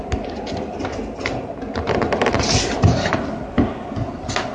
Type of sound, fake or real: real